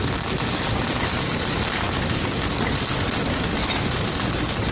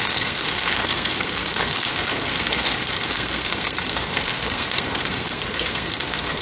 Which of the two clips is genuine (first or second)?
first